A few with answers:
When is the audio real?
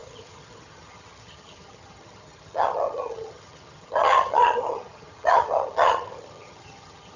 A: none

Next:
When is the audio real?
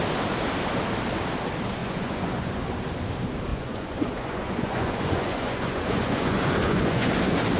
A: 0.0-1.8; 2.6-3.5; 7.1-7.6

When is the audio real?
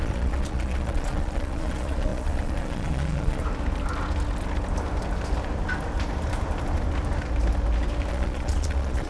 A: 3.4-8.1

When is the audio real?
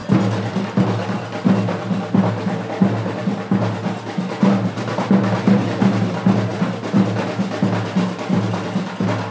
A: 0.0-9.3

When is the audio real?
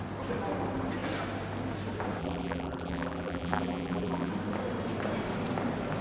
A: 0.0-2.2; 4.3-6.0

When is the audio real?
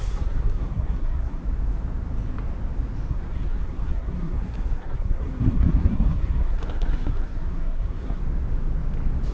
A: 1.4-3.1; 8.2-9.3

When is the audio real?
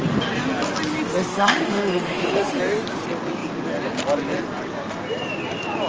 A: 0.0-1.3; 2.6-5.9